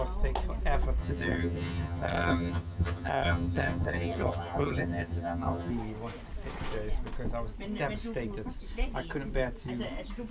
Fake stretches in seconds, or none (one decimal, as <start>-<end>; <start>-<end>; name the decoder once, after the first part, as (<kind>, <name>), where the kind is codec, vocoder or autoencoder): 1.0-5.7 (vocoder, HiFi-GAN)